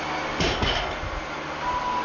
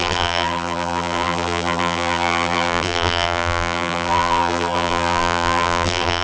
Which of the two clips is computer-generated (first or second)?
second